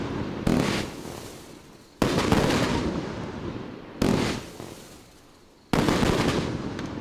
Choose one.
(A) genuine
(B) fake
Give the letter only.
A